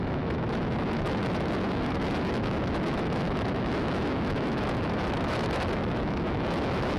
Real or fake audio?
fake